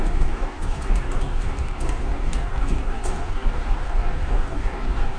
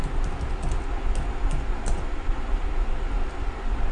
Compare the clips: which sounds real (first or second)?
second